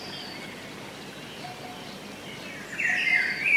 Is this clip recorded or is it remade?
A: recorded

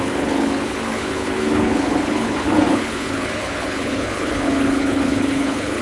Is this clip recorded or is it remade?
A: remade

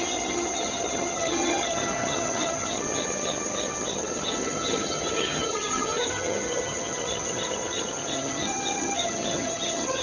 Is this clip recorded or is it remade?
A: remade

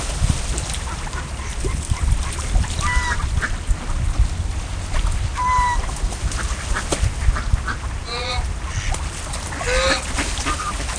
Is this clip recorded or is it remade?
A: recorded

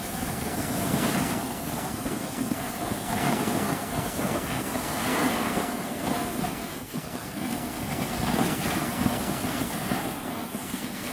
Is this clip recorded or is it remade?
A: remade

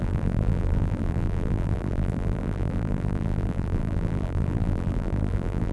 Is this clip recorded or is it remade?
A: remade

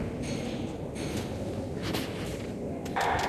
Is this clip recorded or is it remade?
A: recorded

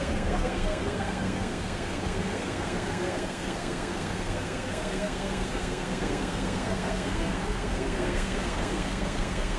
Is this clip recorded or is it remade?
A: remade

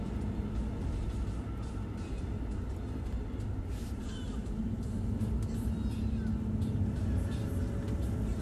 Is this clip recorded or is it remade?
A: recorded